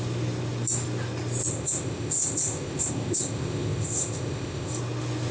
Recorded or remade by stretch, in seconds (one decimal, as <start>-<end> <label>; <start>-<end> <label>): 0.0-1.5 recorded; 1.5-4.7 remade; 4.7-5.3 recorded